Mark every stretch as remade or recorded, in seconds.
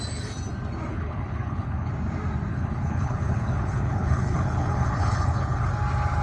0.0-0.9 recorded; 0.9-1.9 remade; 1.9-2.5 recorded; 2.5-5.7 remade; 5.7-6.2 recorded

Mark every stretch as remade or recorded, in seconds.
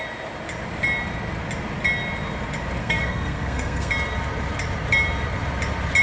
0.0-2.8 recorded; 2.8-3.9 remade; 3.9-6.0 recorded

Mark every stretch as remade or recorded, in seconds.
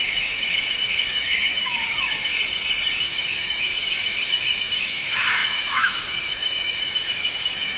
0.0-2.3 remade; 2.3-3.0 recorded; 3.0-7.8 remade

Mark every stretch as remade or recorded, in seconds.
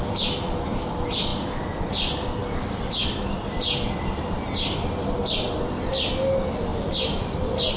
0.0-1.3 recorded; 1.3-1.9 remade; 1.9-2.4 recorded; 2.4-2.9 remade; 2.9-6.7 recorded; 6.7-7.8 remade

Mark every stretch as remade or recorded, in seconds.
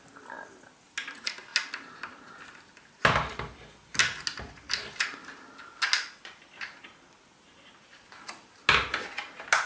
0.0-9.7 recorded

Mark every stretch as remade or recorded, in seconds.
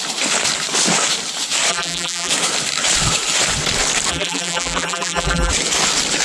0.0-1.7 recorded; 1.7-2.3 remade; 2.3-4.1 recorded; 4.1-5.5 remade; 5.5-6.2 recorded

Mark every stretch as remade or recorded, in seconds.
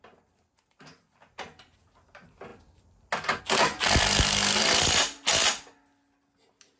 0.0-6.8 recorded